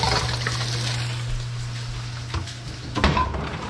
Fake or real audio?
real